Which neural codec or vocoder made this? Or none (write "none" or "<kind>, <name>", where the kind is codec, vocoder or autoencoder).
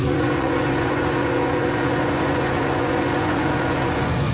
vocoder, Vocos